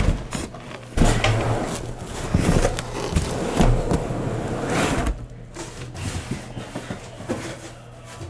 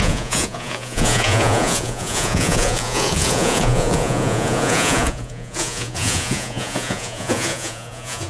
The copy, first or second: second